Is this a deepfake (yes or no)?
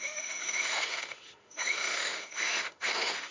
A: yes